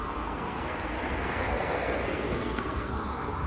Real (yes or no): no